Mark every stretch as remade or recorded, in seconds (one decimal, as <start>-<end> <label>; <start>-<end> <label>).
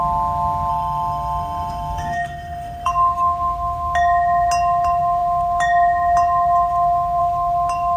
0.0-0.7 recorded; 0.7-2.9 remade; 2.9-8.0 recorded